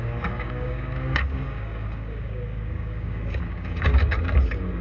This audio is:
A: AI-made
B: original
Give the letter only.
A